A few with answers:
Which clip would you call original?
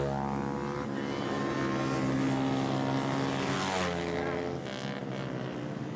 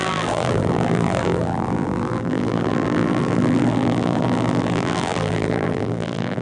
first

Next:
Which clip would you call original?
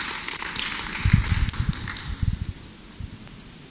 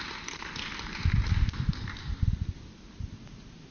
first